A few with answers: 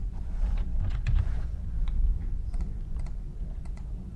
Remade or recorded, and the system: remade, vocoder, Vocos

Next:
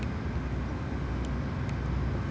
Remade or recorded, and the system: recorded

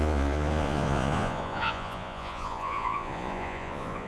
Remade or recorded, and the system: remade, vocoder, Vocos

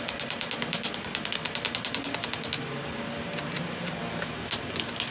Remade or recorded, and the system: recorded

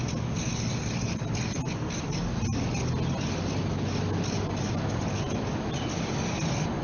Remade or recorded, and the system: recorded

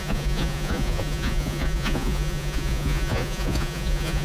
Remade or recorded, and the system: remade, vocoder, Vocos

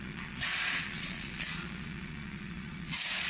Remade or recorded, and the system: remade, vocoder, Vocos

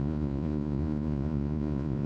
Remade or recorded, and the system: remade, vocoder, Vocos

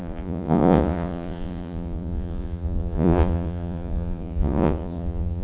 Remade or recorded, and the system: remade, vocoder, Vocos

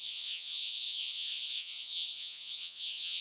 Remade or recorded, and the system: remade, vocoder, Vocos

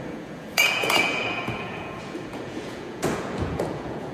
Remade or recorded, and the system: remade, vocoder, Vocos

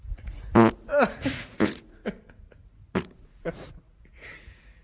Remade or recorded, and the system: remade, vocoder, Vocos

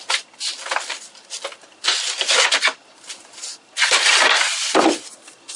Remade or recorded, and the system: recorded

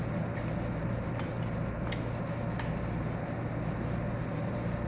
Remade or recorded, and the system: recorded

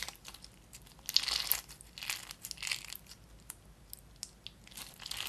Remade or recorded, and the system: recorded